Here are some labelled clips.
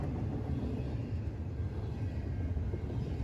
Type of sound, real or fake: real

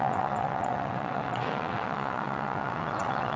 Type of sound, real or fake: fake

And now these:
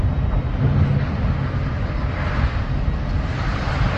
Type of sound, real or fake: real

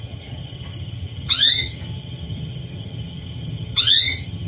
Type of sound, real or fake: fake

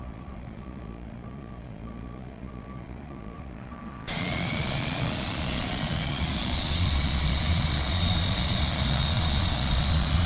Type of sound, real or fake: fake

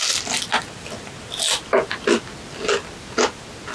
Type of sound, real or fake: real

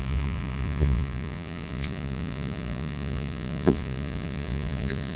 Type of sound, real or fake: fake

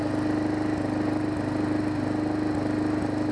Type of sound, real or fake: real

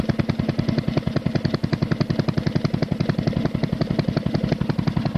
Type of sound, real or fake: real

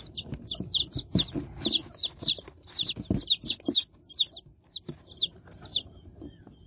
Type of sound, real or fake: real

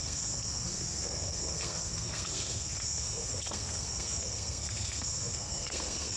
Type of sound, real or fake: fake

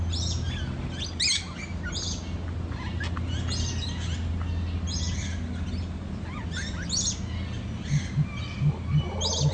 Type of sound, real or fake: real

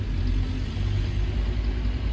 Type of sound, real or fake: real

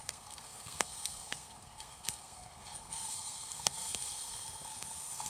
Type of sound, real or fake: fake